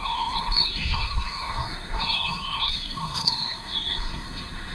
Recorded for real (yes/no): no